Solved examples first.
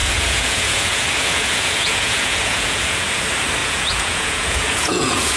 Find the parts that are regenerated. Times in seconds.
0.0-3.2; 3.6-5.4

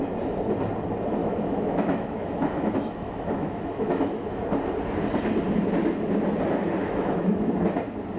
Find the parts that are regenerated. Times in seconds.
1.2-4.4; 6.8-7.5

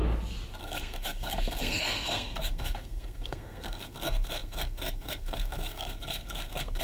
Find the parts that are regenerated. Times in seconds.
0.6-6.8

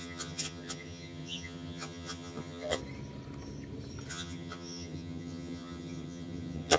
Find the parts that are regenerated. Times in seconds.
0.0-2.8; 4.1-6.8

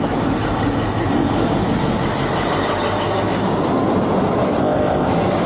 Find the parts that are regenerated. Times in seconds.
4.6-5.1

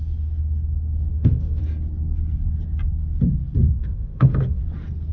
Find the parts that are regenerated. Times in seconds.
1.1-1.6; 3.8-4.6

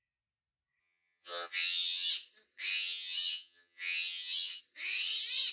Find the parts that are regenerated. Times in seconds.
0.8-2.1; 2.7-4.6